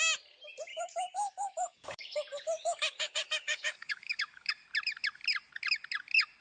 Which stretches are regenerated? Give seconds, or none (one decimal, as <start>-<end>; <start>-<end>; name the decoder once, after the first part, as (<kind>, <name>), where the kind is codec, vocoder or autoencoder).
0.7-4.5 (codec, DAC)